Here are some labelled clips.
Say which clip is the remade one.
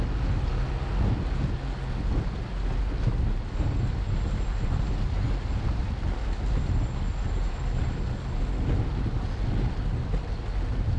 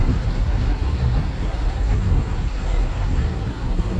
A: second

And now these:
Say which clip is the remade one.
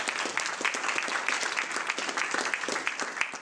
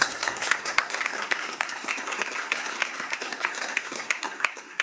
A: second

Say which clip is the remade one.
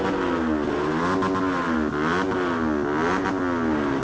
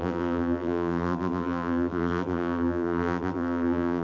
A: second